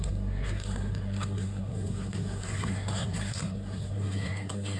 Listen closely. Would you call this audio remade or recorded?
remade